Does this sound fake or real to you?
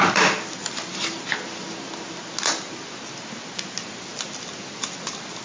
real